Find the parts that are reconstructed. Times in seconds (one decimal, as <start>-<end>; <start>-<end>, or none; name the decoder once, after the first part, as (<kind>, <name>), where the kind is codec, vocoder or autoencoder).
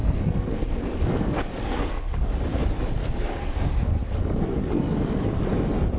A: 0.0-2.3 (codec, SNAC); 3.0-5.4